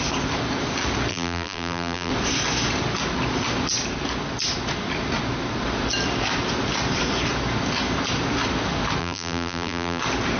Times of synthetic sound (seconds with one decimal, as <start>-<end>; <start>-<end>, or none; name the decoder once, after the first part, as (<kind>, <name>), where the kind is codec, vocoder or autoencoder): 1.1-2.1 (vocoder, BigVGAN v2); 9.0-10.0